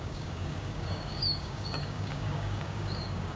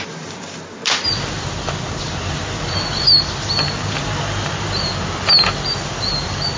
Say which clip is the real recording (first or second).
second